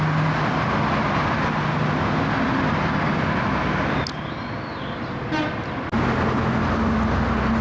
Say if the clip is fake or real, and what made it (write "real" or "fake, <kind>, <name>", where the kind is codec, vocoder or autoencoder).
real